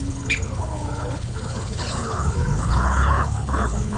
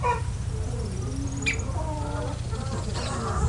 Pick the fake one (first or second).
first